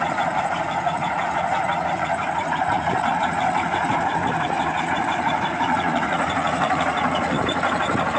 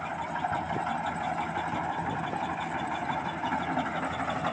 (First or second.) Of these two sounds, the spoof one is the first